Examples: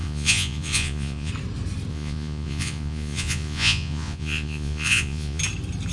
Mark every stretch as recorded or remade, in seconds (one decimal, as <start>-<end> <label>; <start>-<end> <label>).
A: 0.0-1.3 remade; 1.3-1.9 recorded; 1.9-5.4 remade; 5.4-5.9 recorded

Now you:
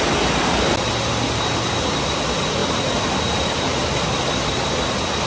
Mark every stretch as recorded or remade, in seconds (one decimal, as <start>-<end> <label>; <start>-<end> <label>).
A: 0.0-5.3 recorded

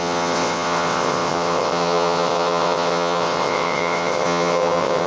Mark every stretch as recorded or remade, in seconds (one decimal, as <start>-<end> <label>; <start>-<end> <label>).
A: 0.0-5.1 remade

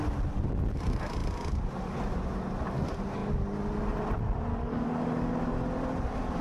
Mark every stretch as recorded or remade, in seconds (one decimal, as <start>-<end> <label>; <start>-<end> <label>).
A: 0.0-4.5 recorded; 4.5-5.3 remade; 5.3-6.4 recorded